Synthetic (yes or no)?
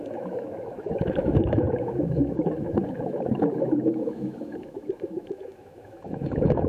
yes